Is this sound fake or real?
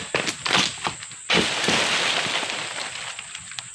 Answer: real